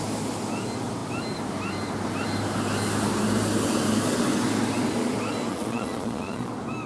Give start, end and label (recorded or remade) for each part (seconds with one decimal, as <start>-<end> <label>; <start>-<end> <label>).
0.0-5.5 recorded; 5.5-6.5 remade; 6.5-6.9 recorded